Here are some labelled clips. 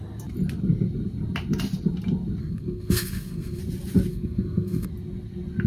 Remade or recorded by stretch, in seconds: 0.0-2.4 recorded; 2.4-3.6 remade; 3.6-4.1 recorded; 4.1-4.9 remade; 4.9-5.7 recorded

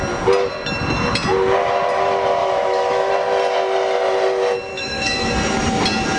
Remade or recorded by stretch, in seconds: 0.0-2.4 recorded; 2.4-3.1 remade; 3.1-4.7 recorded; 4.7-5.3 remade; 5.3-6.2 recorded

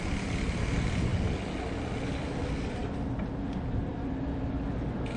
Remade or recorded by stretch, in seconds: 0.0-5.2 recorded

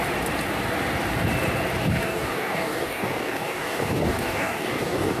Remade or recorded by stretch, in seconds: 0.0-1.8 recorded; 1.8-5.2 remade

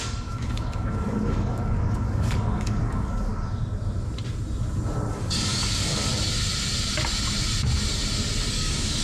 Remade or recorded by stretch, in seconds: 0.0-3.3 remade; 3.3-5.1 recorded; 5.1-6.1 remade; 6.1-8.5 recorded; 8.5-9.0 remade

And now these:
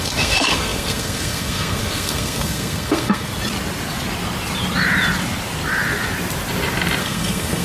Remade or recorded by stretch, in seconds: 0.0-3.3 remade; 3.3-7.0 recorded; 7.0-7.6 remade